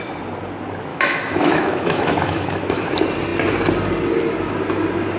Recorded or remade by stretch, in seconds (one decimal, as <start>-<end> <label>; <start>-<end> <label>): 0.0-0.9 recorded; 0.9-2.9 remade; 2.9-5.2 recorded